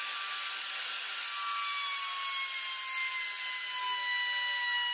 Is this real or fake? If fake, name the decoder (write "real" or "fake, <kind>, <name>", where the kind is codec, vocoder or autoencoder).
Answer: real